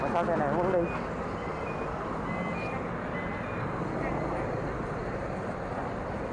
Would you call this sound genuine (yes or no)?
yes